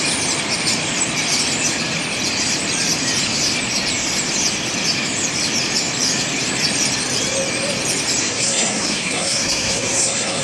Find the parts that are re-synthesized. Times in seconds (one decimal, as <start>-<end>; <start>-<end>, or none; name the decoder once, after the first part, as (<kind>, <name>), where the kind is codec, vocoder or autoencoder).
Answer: 8.2-10.4 (codec, SNAC)

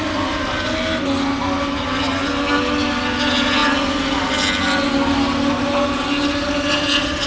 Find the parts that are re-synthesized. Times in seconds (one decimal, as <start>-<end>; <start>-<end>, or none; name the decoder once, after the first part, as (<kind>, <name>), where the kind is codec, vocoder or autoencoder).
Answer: none

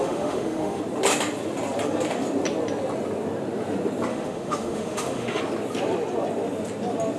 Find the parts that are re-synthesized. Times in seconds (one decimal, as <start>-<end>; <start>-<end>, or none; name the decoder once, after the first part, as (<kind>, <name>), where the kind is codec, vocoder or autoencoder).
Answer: 0.0-0.8 (autoencoder, DAC-VAE); 4.1-5.4

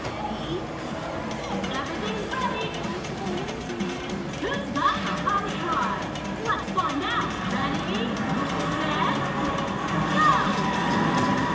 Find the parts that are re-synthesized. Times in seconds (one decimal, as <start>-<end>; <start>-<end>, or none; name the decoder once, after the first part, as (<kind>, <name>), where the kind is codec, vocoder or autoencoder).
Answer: 2.2-4.9 (vocoder, BigVGAN v2)